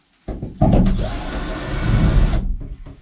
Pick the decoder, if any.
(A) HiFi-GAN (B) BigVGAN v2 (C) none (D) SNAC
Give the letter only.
C